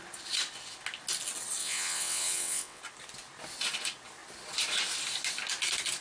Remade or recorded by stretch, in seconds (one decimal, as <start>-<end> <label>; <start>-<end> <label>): 0.0-1.6 recorded; 1.6-2.8 remade; 2.8-6.0 recorded